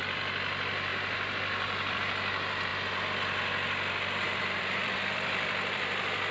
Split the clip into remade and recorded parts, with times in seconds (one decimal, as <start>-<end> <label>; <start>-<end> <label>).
0.0-0.9 remade; 0.9-1.9 recorded; 1.9-2.7 remade; 2.7-4.6 recorded; 4.6-6.3 remade